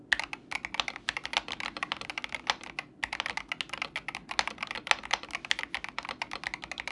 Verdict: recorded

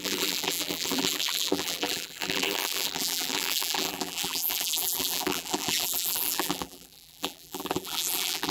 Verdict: remade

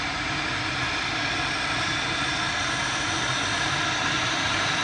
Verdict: recorded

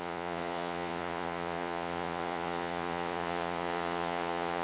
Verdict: remade